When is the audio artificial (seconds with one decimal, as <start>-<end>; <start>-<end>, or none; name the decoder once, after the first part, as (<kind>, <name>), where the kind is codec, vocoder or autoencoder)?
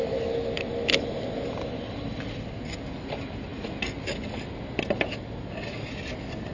none